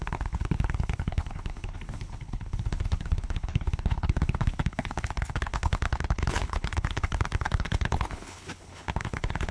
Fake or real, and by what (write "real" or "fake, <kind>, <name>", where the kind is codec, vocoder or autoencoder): fake, codec, HILCodec